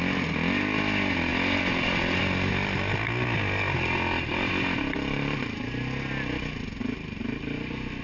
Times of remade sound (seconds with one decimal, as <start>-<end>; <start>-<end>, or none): none